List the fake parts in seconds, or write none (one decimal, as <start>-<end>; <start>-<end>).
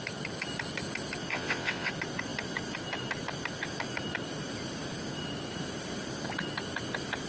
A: 1.3-1.9